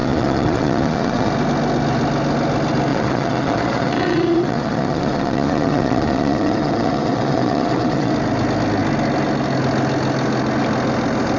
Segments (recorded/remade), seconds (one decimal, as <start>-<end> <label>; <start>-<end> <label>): 0.0-1.3 remade; 1.3-2.9 recorded; 2.9-8.1 remade; 8.1-11.4 recorded